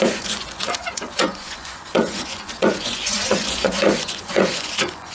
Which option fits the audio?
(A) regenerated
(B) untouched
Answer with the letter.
A